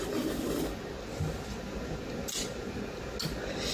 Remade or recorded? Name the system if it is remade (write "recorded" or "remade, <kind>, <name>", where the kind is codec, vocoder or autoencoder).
recorded